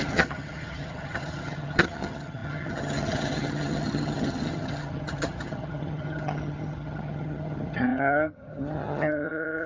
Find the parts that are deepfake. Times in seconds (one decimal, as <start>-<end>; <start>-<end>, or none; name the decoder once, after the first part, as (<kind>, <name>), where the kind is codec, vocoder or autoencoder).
0.0-9.7 (vocoder, HiFi-GAN)